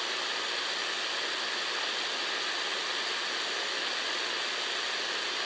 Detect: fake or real real